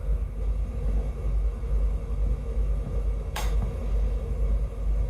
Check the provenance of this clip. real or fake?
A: fake